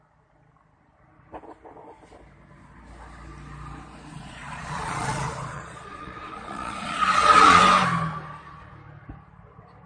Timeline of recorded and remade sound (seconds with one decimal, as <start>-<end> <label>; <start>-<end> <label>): 0.0-4.1 recorded; 4.1-7.6 remade; 7.6-9.9 recorded